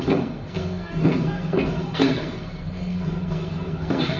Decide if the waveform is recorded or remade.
remade